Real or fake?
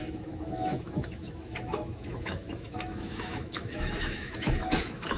fake